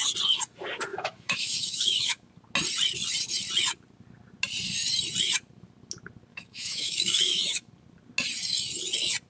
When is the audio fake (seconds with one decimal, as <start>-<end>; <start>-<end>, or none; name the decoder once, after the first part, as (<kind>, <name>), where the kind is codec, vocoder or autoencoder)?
0.9-2.3 (autoencoder, DAC-VAE); 6.3-7.7